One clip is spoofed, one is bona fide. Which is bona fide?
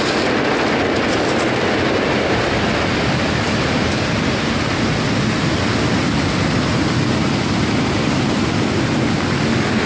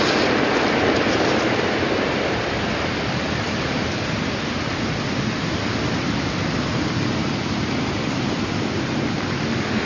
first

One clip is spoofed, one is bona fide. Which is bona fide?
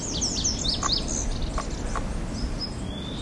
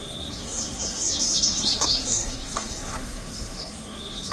first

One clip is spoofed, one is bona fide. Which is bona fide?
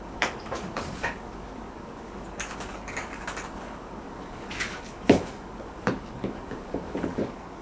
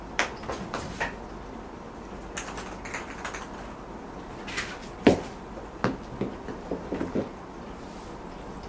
second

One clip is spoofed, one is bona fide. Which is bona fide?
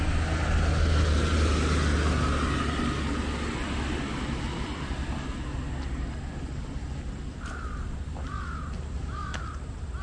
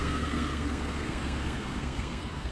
first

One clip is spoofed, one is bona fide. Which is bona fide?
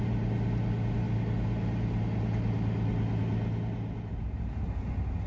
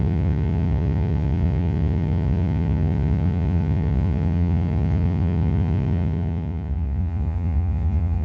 first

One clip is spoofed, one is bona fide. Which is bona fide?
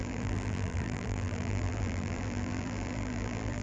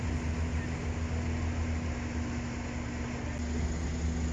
second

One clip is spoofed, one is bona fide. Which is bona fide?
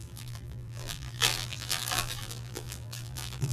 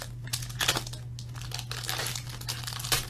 second